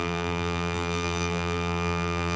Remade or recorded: remade